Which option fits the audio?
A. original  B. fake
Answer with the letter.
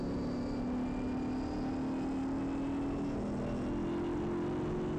A